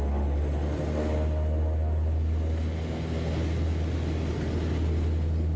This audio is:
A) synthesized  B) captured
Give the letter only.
B